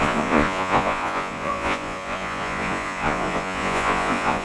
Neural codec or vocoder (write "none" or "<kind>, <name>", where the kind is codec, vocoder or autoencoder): vocoder, Vocos